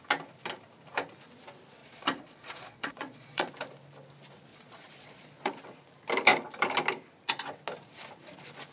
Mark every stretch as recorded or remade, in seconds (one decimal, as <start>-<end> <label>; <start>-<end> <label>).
0.0-1.8 recorded; 1.8-3.5 remade; 3.5-4.5 recorded; 4.5-5.6 remade; 5.6-8.7 recorded